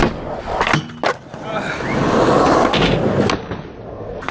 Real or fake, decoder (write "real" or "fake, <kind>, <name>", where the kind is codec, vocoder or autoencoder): real